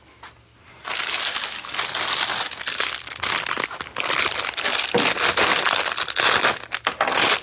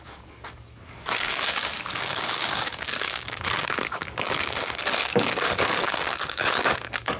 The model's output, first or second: second